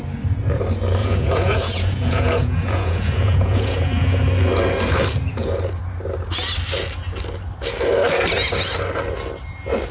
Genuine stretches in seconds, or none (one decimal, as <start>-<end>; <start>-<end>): 0.0-1.0; 4.2-9.9